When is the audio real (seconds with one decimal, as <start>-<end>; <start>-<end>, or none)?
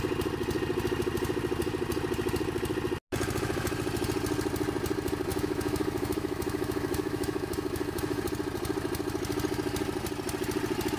0.0-5.3; 8.2-11.0